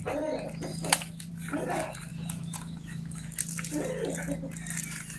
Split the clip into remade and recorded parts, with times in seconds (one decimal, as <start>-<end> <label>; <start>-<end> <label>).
0.0-0.7 recorded; 0.7-1.3 remade; 1.3-2.1 recorded; 2.1-3.4 remade; 3.4-5.2 recorded